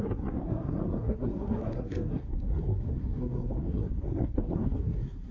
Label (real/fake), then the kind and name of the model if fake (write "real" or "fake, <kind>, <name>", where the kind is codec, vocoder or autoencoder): fake, codec, SNAC